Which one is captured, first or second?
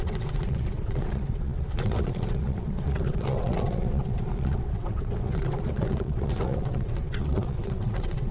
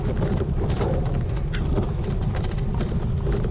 second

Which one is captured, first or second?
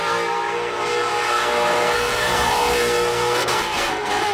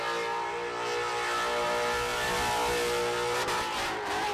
second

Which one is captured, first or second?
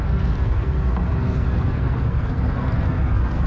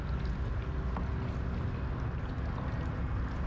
second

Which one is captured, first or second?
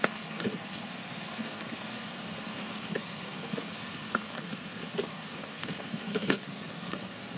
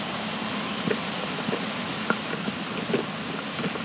second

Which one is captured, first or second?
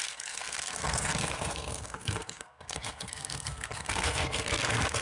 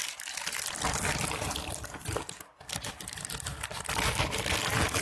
second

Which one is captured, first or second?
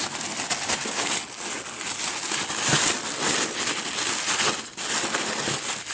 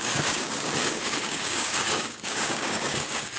first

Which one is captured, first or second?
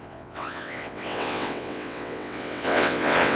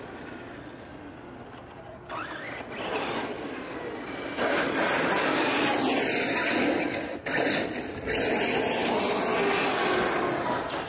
second